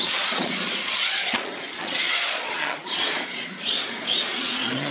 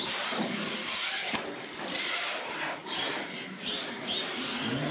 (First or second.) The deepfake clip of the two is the first